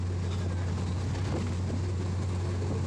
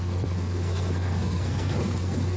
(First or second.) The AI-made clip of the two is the second